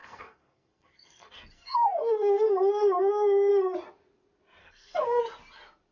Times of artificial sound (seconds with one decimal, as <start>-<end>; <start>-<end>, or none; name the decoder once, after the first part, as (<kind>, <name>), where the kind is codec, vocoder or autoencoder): 0.0-3.5 (codec, SNAC); 4.6-5.2